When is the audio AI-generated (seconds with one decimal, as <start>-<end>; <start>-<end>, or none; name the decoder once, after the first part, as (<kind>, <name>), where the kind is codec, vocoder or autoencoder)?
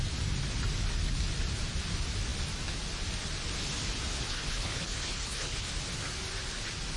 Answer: 4.1-5.7 (codec, HILCodec)